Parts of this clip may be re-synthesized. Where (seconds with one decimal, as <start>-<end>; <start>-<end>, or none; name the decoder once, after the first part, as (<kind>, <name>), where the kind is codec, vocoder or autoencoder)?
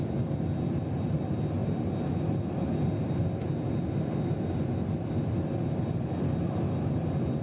none